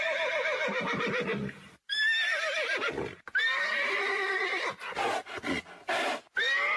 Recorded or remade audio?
recorded